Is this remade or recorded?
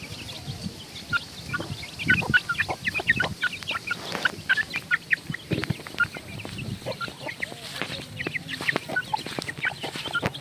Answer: recorded